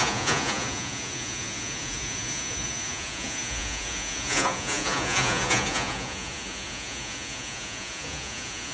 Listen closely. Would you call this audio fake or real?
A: fake